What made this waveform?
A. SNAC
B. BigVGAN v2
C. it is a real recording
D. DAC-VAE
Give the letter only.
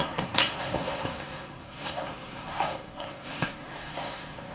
A